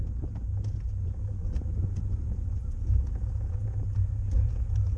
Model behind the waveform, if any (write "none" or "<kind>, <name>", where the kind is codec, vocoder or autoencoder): vocoder, Vocos